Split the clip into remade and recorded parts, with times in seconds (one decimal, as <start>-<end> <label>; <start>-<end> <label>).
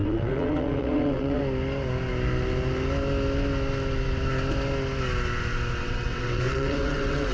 0.0-1.4 remade; 1.4-5.8 recorded; 5.8-7.3 remade